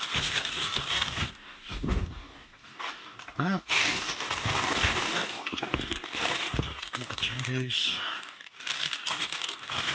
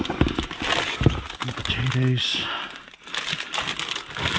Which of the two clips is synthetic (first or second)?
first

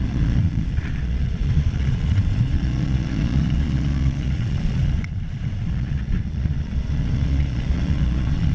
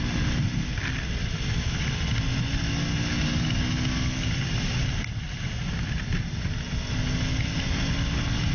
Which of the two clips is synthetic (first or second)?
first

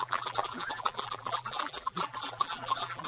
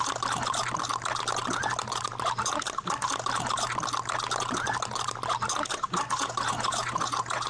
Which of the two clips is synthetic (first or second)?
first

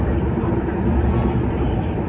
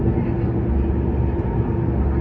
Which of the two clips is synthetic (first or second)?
first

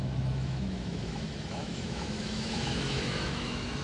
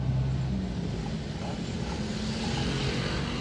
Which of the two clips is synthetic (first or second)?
first